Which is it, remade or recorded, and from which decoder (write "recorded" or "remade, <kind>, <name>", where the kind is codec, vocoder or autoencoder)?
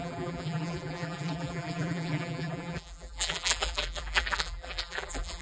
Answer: remade, vocoder, BigVGAN v2